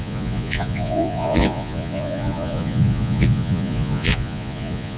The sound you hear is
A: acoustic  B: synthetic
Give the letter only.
B